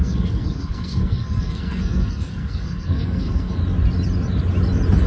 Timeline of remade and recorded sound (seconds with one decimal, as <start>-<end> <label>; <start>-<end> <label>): 0.0-3.6 remade; 3.6-5.1 recorded